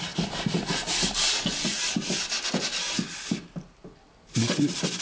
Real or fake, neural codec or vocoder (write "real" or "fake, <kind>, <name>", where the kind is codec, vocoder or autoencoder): real